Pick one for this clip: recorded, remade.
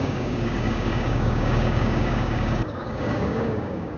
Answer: remade